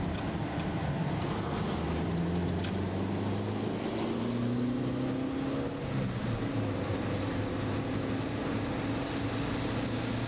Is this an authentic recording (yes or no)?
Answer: yes